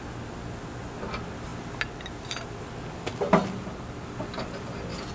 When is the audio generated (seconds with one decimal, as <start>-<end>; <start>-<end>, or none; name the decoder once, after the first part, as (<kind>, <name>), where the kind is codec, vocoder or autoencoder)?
none